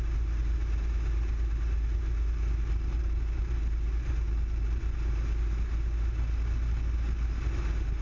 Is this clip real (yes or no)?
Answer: yes